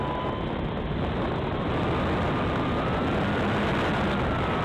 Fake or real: real